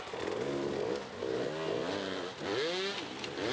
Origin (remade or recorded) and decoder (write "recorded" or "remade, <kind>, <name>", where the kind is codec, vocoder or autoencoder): recorded